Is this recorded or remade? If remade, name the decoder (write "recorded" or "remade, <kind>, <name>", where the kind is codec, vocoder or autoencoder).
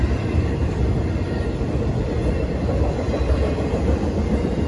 remade, vocoder, BigVGAN v2